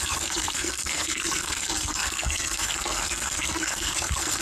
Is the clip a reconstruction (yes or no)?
yes